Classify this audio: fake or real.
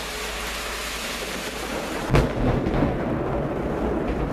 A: real